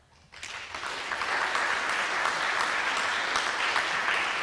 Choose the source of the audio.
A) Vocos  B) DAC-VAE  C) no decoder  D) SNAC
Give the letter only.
C